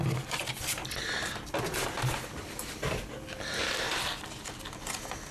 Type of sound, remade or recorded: recorded